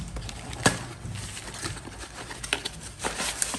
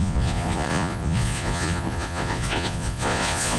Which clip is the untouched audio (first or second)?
first